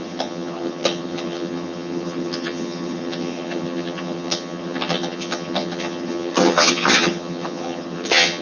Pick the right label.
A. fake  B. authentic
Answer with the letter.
A